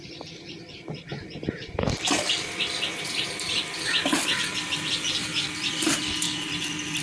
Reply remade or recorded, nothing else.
remade